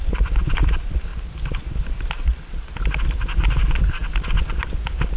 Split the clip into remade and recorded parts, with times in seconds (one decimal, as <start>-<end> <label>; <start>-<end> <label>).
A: 0.0-5.2 recorded